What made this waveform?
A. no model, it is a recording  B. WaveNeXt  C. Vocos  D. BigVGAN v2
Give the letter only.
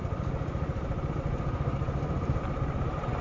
D